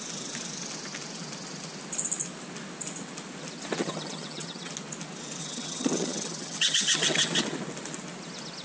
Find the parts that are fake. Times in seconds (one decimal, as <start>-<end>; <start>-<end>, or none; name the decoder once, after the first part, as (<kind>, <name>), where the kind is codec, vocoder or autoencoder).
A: 3.8-4.7 (vocoder, HiFi-GAN); 5.4-7.3